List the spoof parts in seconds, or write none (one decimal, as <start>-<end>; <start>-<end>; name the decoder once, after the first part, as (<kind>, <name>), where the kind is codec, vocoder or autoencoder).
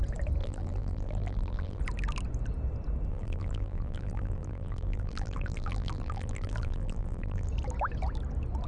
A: 0.4-1.8 (vocoder, BigVGAN v2); 3.1-7.5